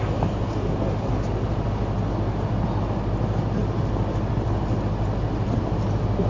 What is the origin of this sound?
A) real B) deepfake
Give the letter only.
A